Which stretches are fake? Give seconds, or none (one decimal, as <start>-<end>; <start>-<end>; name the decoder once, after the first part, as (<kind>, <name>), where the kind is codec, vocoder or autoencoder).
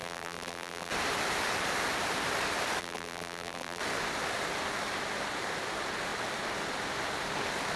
0.0-0.9 (vocoder, BigVGAN v2); 2.8-3.8